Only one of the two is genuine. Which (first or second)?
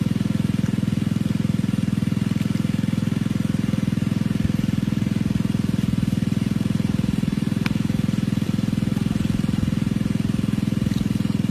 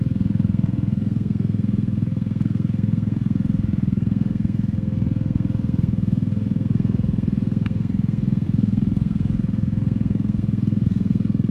first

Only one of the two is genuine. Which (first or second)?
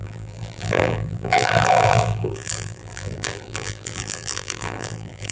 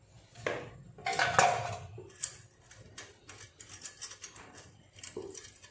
second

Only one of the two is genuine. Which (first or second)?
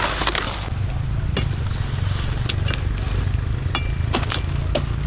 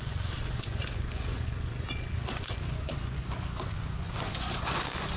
first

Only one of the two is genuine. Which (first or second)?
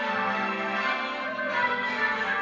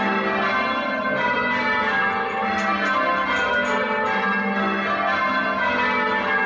second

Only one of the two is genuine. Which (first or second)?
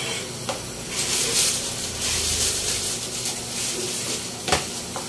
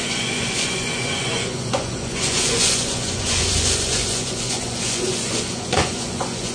first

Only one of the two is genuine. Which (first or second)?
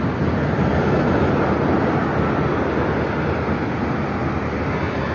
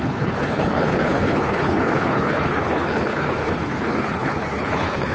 first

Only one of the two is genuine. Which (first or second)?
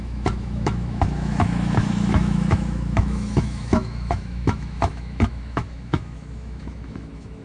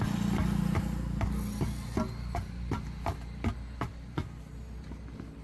second